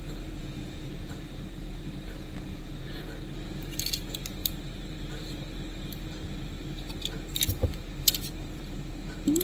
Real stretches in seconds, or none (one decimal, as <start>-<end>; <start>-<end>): 0.0-0.4; 1.1-2.2; 3.0-9.4